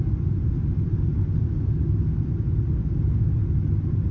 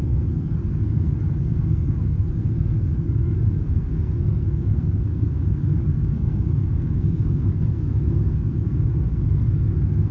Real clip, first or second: first